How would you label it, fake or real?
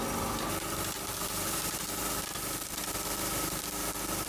real